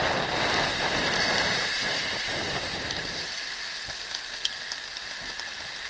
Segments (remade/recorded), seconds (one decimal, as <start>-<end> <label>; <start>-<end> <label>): 0.0-0.7 recorded; 0.7-3.6 remade; 3.6-5.9 recorded